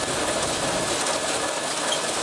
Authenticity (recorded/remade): recorded